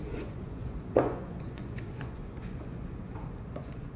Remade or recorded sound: remade